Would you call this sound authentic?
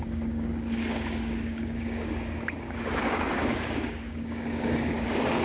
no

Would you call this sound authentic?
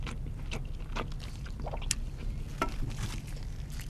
yes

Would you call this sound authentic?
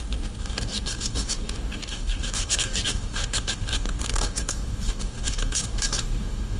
no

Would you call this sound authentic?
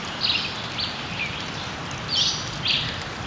yes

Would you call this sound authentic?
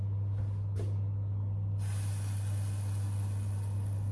yes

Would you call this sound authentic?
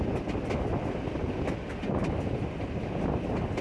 yes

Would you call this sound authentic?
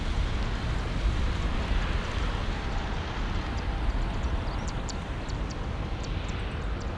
yes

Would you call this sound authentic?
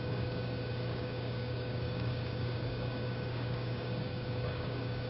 no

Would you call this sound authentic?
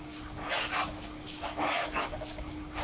no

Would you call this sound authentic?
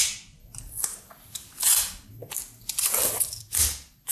yes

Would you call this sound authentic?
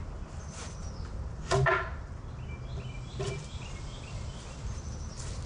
yes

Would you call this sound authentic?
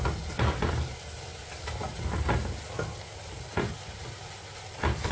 yes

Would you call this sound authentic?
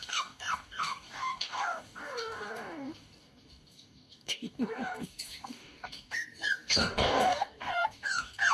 no